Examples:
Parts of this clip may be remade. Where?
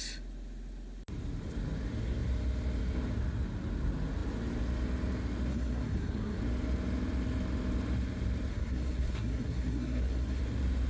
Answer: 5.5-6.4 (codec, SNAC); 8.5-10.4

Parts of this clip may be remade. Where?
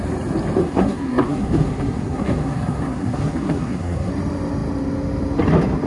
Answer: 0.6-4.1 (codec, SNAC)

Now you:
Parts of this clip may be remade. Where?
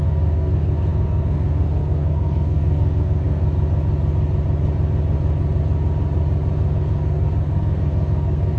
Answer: 0.0-3.4 (codec, SNAC); 6.6-8.6